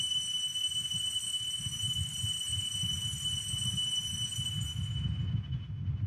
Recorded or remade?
recorded